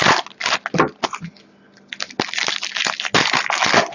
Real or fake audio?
real